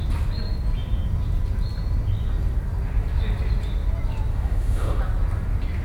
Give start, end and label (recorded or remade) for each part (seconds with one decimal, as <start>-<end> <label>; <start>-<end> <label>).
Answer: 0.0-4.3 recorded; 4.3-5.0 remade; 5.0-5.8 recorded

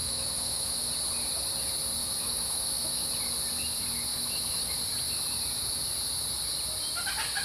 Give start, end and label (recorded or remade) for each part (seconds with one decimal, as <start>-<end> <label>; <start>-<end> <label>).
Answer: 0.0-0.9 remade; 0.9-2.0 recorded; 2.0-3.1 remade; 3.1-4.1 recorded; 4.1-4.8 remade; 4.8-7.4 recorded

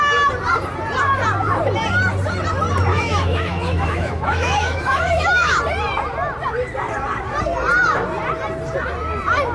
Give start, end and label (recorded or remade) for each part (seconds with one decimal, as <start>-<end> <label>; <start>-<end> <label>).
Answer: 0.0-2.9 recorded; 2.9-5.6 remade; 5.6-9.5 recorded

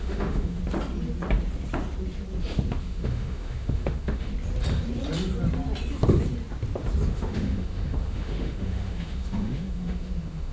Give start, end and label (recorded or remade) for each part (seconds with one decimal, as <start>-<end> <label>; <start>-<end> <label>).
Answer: 0.0-0.6 remade; 0.6-2.8 recorded; 2.8-4.3 remade; 4.3-7.1 recorded; 7.1-10.5 remade

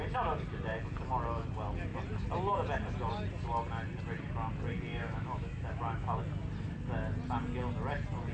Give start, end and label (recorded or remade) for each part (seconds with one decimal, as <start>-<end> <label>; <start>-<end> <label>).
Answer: 0.0-4.9 recorded; 4.9-6.2 remade; 6.2-8.3 recorded

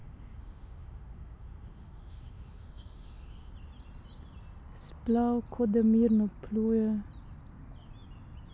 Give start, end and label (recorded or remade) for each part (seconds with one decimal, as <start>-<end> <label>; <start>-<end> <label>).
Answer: 0.0-3.5 remade; 3.5-8.5 recorded

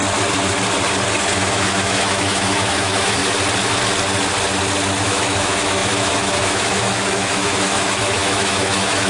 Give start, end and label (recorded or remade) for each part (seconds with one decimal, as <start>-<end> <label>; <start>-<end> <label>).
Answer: 0.0-1.5 recorded; 1.5-3.2 remade; 3.2-5.0 recorded; 5.0-9.1 remade

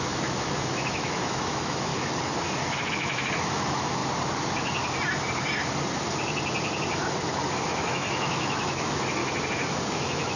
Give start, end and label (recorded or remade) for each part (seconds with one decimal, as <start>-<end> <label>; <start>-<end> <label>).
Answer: 0.0-1.9 remade; 1.9-2.9 recorded; 2.9-4.0 remade; 4.0-7.6 recorded; 7.6-9.2 remade; 9.2-9.9 recorded; 9.9-10.4 remade